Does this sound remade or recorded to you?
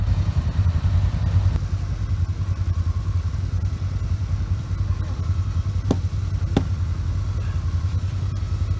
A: recorded